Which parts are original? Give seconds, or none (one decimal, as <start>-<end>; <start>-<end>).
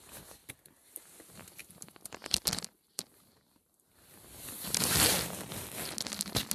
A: 0.0-0.4; 1.0-1.6; 5.5-6.5